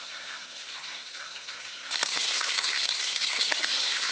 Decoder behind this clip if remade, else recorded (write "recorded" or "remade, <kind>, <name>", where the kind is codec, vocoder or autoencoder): remade, codec, SNAC